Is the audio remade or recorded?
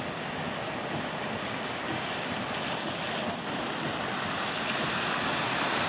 recorded